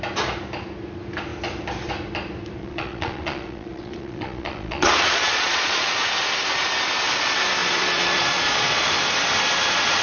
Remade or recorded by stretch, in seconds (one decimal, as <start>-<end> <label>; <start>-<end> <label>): 0.0-2.6 recorded; 2.6-6.1 remade; 6.1-7.6 recorded; 7.6-8.9 remade; 8.9-10.0 recorded